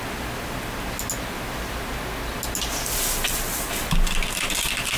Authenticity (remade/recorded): recorded